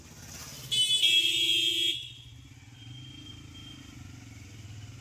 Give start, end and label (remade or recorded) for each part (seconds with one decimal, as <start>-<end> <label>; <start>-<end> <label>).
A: 0.0-5.0 recorded